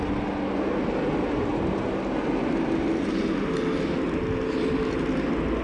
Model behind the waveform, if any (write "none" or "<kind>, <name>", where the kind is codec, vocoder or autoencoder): none